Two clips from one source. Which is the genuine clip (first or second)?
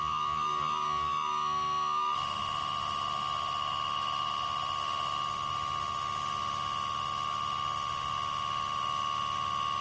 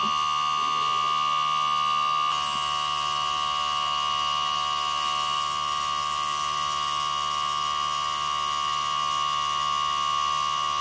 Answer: second